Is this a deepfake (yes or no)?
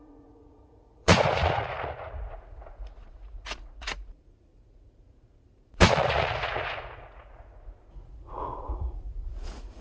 yes